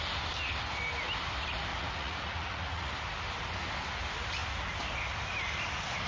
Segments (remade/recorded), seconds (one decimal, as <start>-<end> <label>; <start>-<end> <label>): 0.0-1.7 recorded; 1.7-3.0 remade; 3.0-6.1 recorded